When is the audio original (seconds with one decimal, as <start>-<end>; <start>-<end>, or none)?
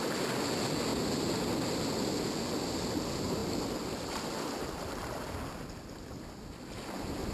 0.0-7.3